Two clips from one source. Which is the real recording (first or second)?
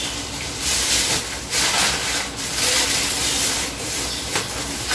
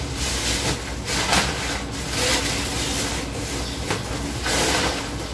second